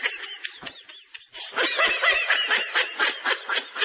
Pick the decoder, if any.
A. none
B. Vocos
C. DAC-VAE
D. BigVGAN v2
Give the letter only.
A